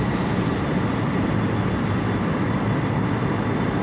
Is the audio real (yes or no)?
yes